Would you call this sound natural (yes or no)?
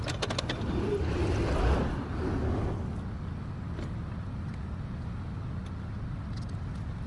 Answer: yes